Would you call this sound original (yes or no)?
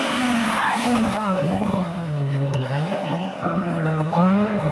no